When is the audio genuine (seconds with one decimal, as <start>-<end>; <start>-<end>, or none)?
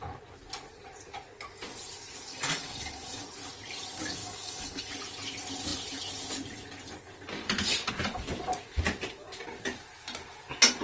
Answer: 0.0-2.3; 3.2-4.2; 4.9-10.8